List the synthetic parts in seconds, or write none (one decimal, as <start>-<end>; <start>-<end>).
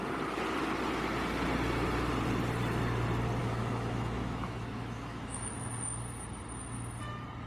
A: 3.4-5.5